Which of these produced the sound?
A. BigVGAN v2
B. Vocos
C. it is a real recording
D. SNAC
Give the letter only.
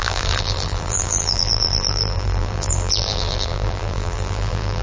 A